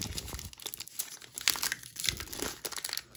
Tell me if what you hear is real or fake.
real